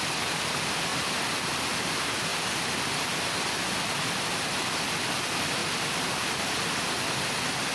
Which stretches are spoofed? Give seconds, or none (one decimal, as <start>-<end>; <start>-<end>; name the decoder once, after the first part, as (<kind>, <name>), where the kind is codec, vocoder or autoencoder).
none

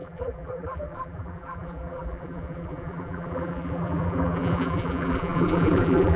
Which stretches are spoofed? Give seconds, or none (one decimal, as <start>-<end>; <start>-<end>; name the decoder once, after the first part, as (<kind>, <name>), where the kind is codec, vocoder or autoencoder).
0.0-6.2 (vocoder, BigVGAN v2)